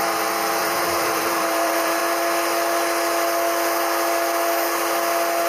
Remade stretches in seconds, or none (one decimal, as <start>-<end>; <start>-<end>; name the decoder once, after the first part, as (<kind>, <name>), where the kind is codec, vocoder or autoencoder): 0.0-2.0 (vocoder, BigVGAN v2)